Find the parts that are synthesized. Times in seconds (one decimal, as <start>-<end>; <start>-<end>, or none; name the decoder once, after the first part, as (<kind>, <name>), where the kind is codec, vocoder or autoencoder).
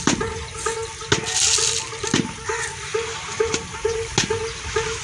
none